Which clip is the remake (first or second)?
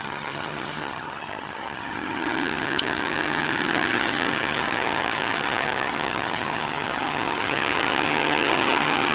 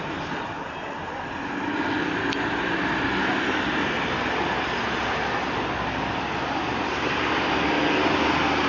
first